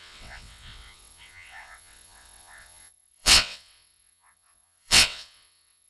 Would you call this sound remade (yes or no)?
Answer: yes